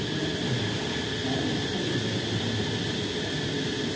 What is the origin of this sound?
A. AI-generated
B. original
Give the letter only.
B